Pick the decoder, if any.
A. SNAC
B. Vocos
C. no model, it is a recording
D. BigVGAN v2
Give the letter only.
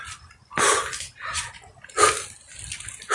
C